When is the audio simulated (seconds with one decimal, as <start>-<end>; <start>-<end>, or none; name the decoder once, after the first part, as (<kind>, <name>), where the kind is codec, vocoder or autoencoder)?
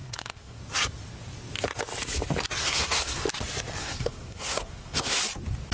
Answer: 0.0-0.6 (codec, SNAC); 2.6-3.2; 3.8-5.2